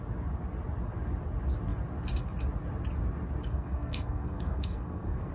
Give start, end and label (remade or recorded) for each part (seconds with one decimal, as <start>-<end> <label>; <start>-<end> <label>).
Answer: 0.0-3.5 recorded; 3.5-5.3 remade